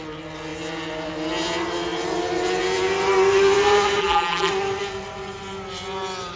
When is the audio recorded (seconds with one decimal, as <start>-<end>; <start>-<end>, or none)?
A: 0.0-4.0; 4.5-6.4